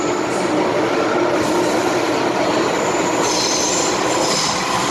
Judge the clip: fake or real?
real